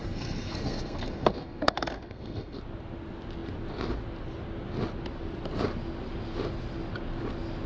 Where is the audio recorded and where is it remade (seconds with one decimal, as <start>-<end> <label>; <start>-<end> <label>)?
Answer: 0.0-2.6 remade; 2.6-7.7 recorded